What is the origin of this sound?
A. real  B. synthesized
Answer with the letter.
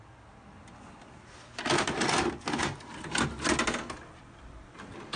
A